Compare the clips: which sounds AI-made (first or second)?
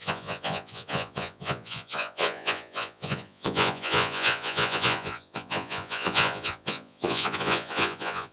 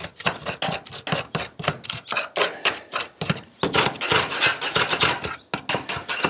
first